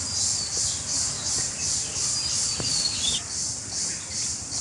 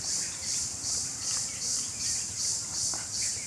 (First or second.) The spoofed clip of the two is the second